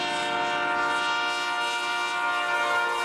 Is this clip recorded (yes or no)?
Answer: yes